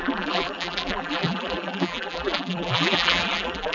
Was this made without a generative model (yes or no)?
no